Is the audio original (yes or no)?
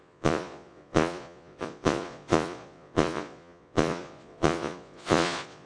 no